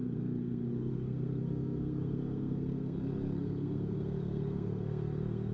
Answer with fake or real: fake